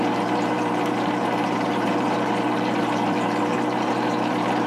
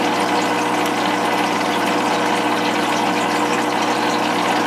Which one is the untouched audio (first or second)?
second